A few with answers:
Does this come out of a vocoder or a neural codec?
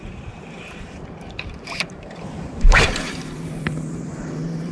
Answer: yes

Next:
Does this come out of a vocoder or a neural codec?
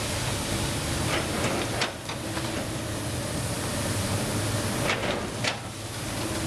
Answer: no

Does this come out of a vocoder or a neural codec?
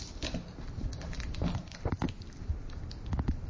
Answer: yes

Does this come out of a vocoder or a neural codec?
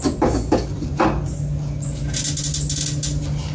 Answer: no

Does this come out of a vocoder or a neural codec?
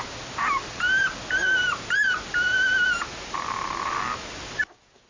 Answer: no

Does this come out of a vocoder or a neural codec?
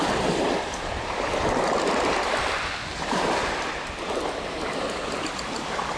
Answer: no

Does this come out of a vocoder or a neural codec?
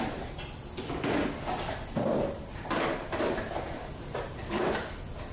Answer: yes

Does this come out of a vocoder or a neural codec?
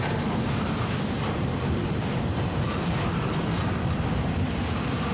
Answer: yes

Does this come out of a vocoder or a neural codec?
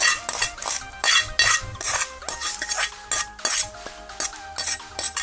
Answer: no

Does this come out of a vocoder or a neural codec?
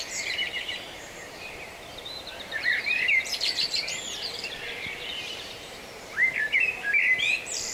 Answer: yes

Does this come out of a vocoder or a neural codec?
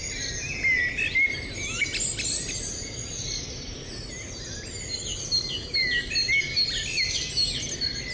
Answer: no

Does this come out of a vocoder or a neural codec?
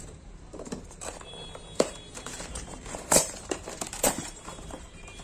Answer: yes